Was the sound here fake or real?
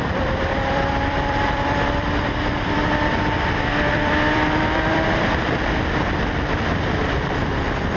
fake